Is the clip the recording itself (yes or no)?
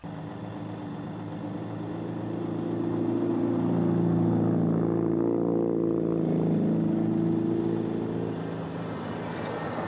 yes